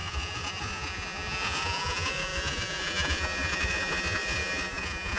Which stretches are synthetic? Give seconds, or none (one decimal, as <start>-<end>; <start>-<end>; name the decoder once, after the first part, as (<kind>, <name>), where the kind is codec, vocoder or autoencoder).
0.0-5.2 (vocoder, Vocos)